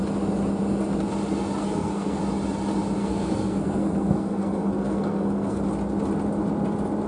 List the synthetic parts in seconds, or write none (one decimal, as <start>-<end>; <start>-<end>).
1.6-2.2; 3.0-5.6